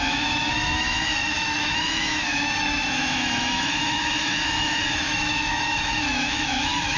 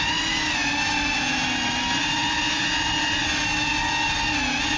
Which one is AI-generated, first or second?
first